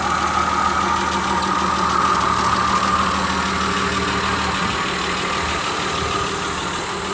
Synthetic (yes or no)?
no